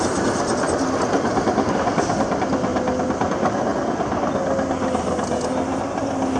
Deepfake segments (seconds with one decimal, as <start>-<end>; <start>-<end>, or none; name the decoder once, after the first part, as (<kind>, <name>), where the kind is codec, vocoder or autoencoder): none